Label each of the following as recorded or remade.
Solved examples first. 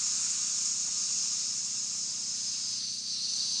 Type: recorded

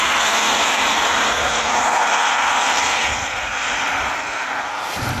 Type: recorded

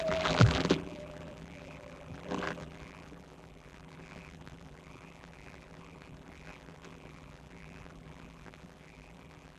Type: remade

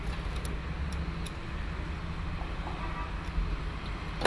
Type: recorded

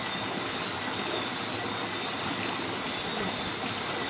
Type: recorded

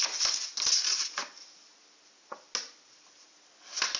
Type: recorded